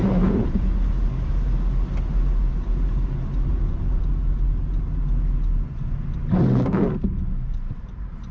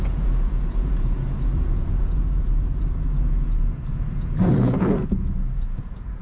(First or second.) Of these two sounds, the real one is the first